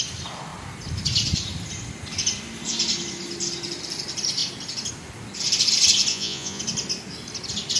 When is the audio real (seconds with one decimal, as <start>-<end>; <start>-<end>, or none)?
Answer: 0.0-6.1; 6.6-7.8